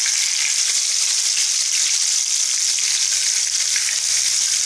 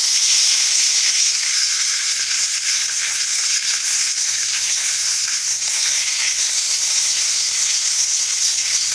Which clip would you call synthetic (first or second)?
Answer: second